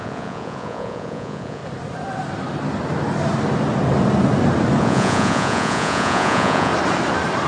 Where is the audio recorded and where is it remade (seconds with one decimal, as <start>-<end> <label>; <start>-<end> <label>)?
0.0-1.6 remade; 1.6-4.8 recorded; 4.8-6.7 remade; 6.7-7.5 recorded